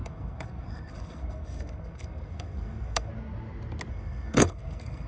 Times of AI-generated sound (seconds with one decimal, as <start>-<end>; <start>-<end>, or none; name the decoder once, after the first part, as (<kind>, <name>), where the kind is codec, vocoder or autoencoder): 0.0-3.1 (codec, SNAC); 3.9-5.1